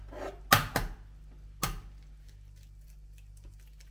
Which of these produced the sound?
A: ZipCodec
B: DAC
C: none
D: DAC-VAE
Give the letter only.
C